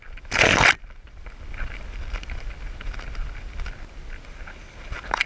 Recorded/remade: recorded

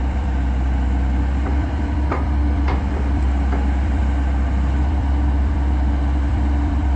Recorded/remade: remade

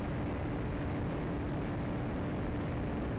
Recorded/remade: recorded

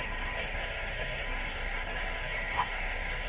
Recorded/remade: remade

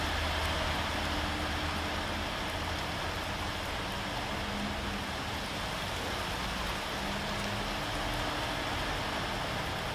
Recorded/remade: recorded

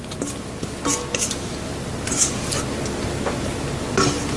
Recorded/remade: recorded